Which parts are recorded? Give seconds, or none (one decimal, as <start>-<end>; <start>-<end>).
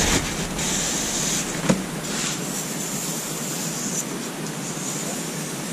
0.0-5.7